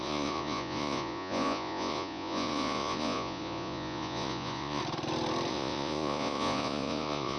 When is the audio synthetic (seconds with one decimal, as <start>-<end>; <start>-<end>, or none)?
0.0-4.8; 5.5-7.4